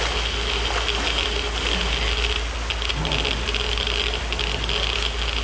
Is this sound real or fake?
real